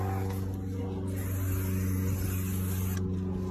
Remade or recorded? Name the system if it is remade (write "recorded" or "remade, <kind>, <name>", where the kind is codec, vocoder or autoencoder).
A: recorded